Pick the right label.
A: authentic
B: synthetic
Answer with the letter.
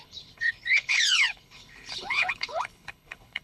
B